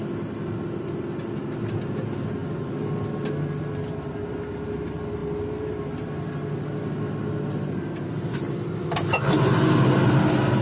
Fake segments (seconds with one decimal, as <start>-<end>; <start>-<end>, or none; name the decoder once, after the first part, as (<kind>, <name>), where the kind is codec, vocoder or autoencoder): none